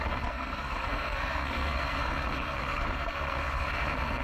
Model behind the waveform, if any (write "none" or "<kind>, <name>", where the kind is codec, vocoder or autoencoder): codec, SNAC